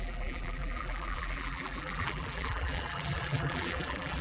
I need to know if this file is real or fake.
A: fake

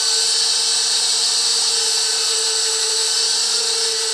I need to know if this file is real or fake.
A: real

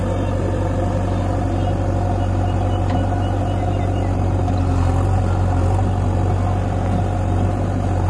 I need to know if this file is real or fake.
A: real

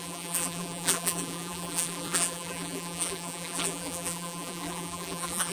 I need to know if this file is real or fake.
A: fake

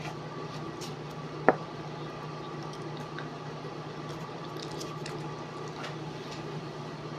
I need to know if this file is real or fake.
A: real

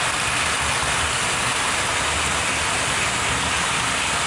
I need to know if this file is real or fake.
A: real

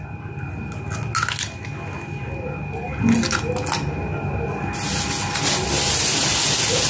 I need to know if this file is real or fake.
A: real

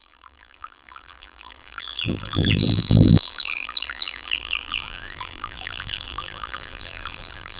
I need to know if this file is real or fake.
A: fake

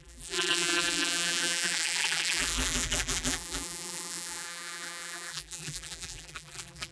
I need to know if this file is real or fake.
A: fake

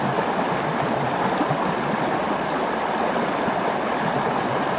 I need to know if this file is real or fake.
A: real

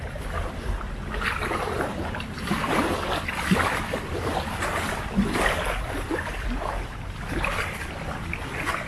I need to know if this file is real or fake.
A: fake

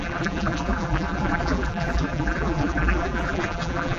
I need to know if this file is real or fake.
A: fake